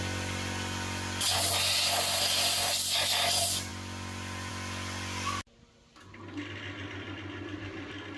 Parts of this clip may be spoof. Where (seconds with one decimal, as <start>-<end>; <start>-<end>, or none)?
none